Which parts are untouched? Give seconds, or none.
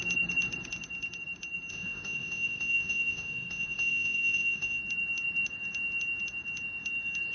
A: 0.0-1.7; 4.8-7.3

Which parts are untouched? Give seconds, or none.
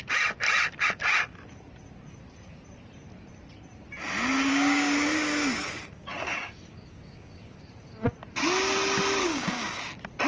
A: 0.0-4.5; 7.6-9.2; 9.8-10.3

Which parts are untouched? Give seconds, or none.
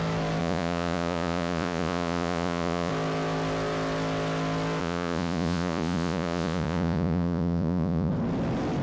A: 0.0-0.4; 2.9-4.8; 8.1-8.8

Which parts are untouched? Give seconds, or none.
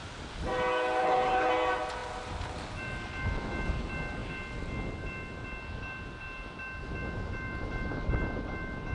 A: 0.0-1.0; 1.5-8.9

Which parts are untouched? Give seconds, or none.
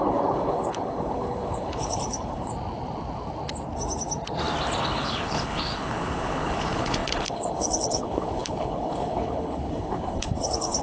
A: 2.5-4.8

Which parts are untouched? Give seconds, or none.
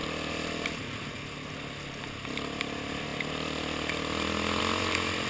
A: 0.0-5.3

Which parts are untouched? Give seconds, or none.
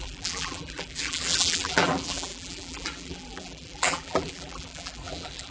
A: none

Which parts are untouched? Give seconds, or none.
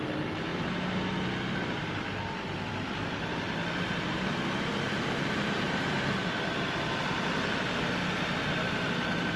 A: 0.0-9.4